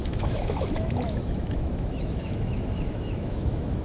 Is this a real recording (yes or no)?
no